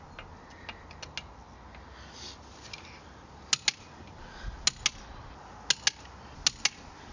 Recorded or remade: recorded